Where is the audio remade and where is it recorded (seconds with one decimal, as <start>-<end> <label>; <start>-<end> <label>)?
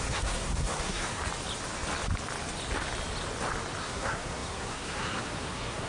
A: 0.0-1.2 remade; 1.2-3.8 recorded; 3.8-5.9 remade